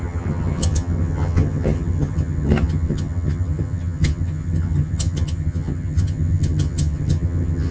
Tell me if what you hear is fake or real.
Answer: fake